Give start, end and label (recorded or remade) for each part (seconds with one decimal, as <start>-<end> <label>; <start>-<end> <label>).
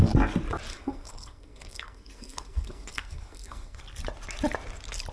0.0-0.7 recorded; 0.7-3.8 remade; 3.8-5.1 recorded